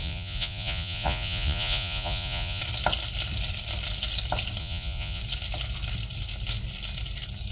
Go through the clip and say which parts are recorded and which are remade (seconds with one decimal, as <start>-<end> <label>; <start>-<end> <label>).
0.0-2.6 remade; 2.6-4.6 recorded; 4.6-5.2 remade; 5.2-7.5 recorded